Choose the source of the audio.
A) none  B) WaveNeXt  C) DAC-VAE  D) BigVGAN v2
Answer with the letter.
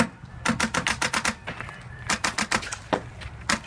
A